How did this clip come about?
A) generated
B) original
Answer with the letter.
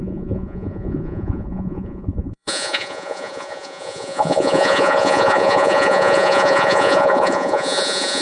A